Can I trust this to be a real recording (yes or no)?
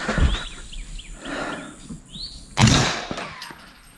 yes